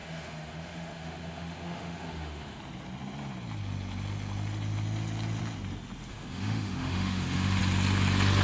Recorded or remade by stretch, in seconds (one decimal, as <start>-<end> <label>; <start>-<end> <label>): 0.0-2.6 remade; 2.6-6.1 recorded; 6.1-7.6 remade; 7.6-8.4 recorded